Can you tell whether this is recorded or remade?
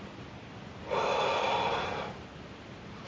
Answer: recorded